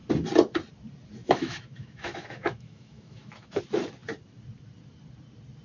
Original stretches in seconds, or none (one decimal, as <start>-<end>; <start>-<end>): 0.0-1.2; 3.6-5.6